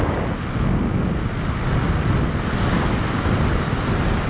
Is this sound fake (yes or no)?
no